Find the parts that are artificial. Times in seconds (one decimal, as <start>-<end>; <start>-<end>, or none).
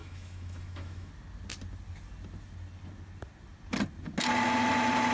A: 0.0-1.1